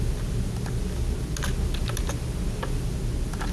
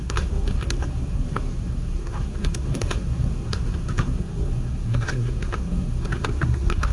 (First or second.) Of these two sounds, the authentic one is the first